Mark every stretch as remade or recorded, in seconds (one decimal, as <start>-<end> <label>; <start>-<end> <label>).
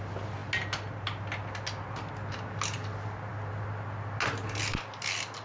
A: 0.0-5.4 recorded